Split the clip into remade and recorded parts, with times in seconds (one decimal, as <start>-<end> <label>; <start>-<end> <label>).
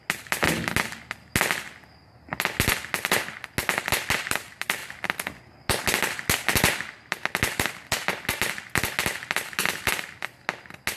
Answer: 0.0-11.0 recorded